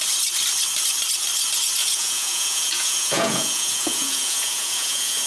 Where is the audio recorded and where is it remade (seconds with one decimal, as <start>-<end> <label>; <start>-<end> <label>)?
0.0-1.8 recorded; 1.8-5.3 remade